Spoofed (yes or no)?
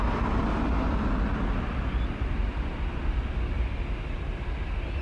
no